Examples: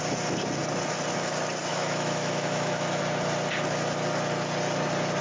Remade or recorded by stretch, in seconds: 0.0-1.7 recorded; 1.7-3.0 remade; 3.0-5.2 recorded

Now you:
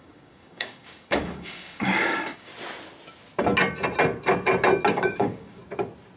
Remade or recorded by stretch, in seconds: 0.0-2.5 remade; 2.5-4.9 recorded; 4.9-5.6 remade; 5.6-6.2 recorded

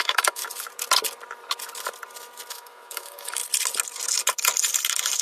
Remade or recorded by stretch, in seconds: 0.0-0.4 remade; 0.4-2.5 recorded; 2.5-3.4 remade; 3.4-5.2 recorded

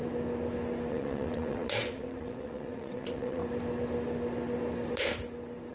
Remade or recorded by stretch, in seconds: 0.0-0.9 recorded; 0.9-3.4 remade; 3.4-5.7 recorded

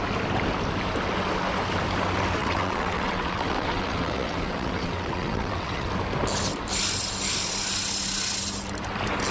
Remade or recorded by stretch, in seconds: 0.0-2.4 recorded; 2.4-5.9 remade; 5.9-9.3 recorded

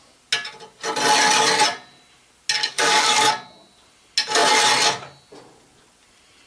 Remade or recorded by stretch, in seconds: 0.0-2.6 recorded; 2.6-3.3 remade; 3.3-6.5 recorded

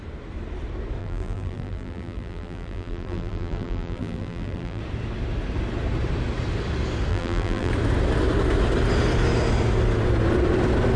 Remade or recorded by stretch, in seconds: 0.0-1.0 recorded; 1.0-4.8 remade; 4.8-7.1 recorded; 7.1-7.7 remade; 7.7-11.0 recorded

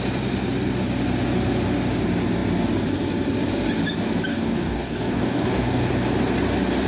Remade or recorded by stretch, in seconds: 0.0-4.3 recorded; 4.3-5.9 remade; 5.9-6.9 recorded